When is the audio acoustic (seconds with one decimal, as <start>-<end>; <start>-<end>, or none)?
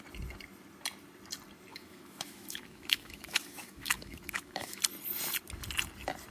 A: 0.0-1.7; 4.8-6.3